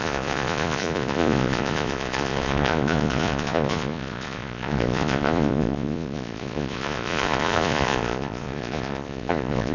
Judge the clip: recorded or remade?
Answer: remade